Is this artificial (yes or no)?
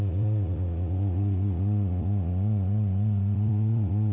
yes